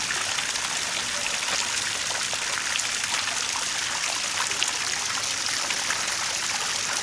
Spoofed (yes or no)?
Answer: no